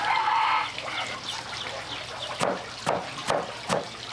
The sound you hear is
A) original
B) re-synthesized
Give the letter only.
A